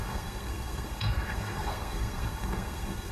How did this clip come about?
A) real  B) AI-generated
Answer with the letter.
B